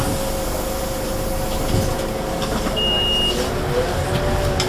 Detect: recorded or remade recorded